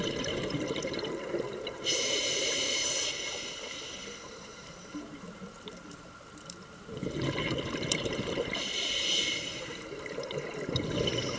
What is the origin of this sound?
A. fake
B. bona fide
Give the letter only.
A